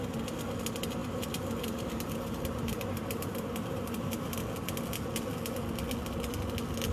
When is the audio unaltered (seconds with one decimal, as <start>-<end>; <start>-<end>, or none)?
0.0-1.0; 4.4-6.9